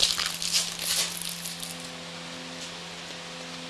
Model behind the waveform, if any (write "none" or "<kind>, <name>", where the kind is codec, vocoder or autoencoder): none